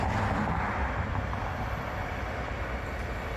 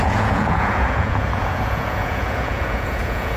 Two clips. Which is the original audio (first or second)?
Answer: first